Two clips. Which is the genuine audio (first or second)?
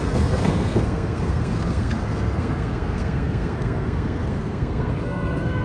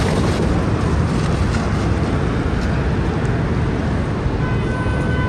second